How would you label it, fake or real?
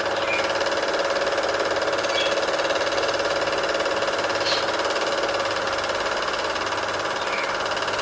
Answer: real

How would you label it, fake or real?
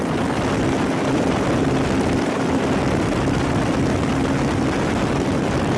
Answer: real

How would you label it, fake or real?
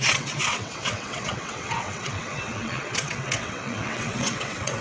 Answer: fake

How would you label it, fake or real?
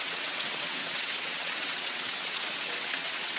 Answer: fake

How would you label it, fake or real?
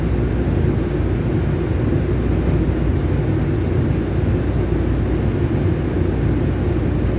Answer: real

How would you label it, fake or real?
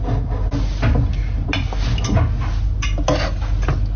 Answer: real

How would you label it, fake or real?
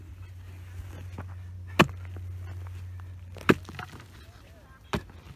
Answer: real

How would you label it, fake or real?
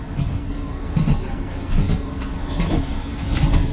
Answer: fake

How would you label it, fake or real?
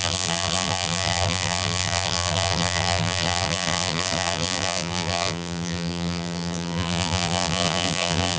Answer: fake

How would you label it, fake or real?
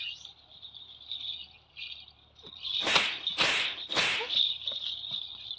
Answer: real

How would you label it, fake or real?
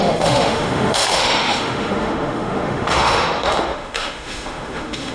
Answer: fake